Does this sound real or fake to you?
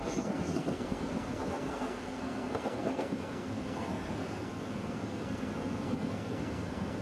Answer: fake